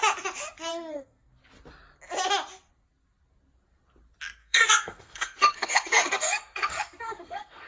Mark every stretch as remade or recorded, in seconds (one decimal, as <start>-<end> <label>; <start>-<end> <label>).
0.0-0.7 recorded; 0.7-1.3 remade; 1.3-4.4 recorded; 4.4-7.7 remade